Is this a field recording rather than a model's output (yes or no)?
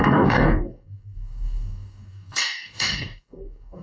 no